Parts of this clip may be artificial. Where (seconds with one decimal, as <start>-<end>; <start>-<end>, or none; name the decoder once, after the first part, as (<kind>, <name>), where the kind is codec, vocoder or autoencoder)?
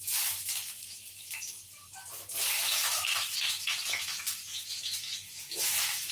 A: 0.0-6.1 (autoencoder, DAC-VAE)